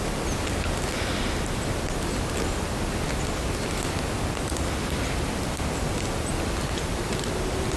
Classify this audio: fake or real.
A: real